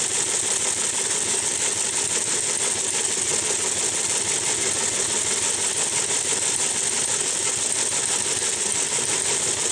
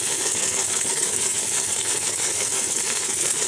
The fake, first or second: second